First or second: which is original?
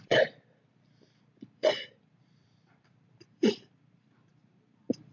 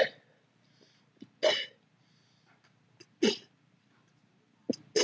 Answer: second